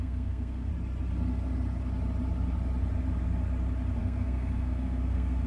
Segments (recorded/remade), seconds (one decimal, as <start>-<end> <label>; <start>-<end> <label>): 0.0-0.7 remade; 0.7-4.0 recorded; 4.0-5.5 remade